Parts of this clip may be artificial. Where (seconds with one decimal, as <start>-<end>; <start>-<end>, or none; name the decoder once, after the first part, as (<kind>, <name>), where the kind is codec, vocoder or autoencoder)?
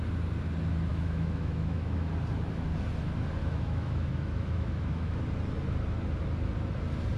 0.9-2.1 (autoencoder, DAC-VAE); 3.4-5.2